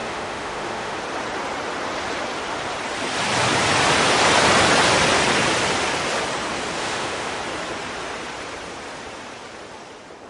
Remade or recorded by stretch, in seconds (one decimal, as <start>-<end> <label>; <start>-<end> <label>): 0.0-1.0 remade; 1.0-6.8 recorded; 6.8-7.4 remade; 7.4-10.3 recorded

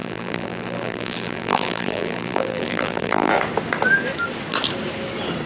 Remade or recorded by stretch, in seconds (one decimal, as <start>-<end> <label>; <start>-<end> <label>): 0.0-3.3 remade; 3.3-5.5 recorded

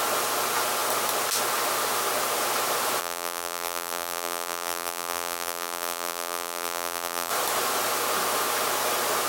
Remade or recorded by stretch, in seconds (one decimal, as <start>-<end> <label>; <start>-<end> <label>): 0.0-3.0 recorded; 3.0-7.3 remade; 7.3-9.3 recorded

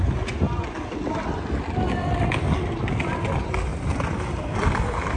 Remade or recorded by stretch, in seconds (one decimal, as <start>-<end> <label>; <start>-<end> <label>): 0.0-5.2 recorded

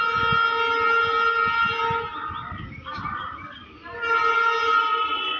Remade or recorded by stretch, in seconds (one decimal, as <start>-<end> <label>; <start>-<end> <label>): 0.0-5.4 recorded